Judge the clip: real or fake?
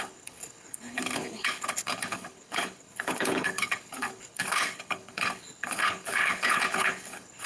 fake